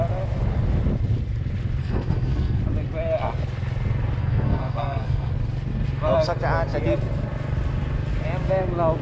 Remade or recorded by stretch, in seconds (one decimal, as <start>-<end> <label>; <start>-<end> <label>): 0.0-1.8 recorded; 1.8-2.6 remade; 2.6-4.2 recorded; 4.2-5.3 remade; 5.3-9.0 recorded